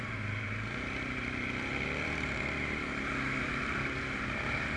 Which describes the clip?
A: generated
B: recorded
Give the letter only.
A